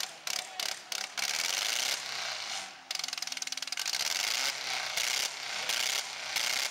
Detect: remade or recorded recorded